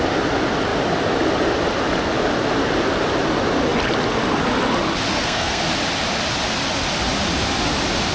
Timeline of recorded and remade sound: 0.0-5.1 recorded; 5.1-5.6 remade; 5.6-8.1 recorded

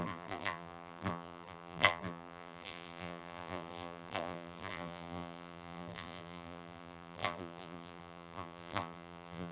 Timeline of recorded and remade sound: 0.0-9.5 remade

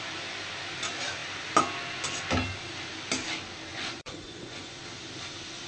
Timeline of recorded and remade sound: 0.0-3.7 recorded; 3.7-4.8 remade; 4.8-5.7 recorded

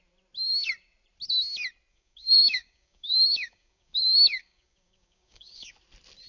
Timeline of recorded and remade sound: 0.0-1.9 recorded; 1.9-5.7 remade; 5.7-6.3 recorded

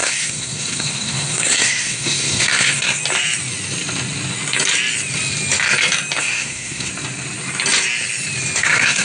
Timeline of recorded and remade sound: 0.0-3.0 remade; 3.0-6.2 recorded; 6.2-6.9 remade; 6.9-8.6 recorded; 8.6-9.0 remade

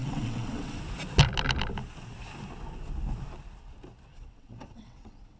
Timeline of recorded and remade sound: 0.0-0.8 remade; 0.8-4.1 recorded; 4.1-5.4 remade